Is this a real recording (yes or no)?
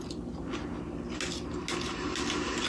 yes